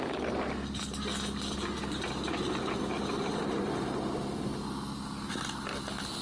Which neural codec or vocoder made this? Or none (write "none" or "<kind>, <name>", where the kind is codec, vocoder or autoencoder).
none